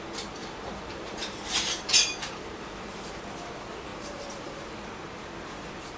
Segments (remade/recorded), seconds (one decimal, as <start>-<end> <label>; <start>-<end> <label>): 0.0-0.4 recorded; 0.4-2.8 remade; 2.8-3.9 recorded; 3.9-4.7 remade; 4.7-6.0 recorded

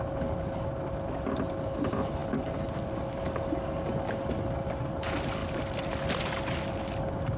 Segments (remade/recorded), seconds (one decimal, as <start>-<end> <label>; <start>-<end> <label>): 0.0-5.4 recorded; 5.4-6.6 remade; 6.6-7.4 recorded

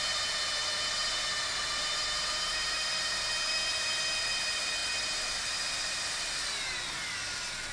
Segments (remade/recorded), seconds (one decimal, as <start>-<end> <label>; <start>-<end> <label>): 0.0-7.7 recorded

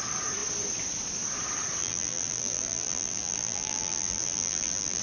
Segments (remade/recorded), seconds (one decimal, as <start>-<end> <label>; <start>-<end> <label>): 0.0-1.8 recorded; 1.8-5.0 remade

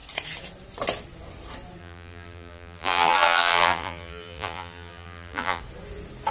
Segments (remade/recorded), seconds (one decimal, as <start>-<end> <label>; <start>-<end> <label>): 0.0-1.8 recorded; 1.8-5.6 remade; 5.6-6.3 recorded

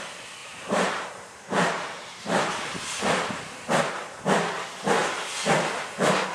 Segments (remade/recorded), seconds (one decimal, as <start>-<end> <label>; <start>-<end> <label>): 0.0-0.4 recorded; 0.4-3.9 remade; 3.9-6.3 recorded